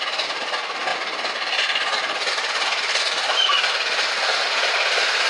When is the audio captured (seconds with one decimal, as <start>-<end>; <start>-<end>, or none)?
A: 0.0-5.3